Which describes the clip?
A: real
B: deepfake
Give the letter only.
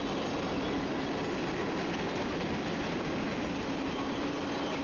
A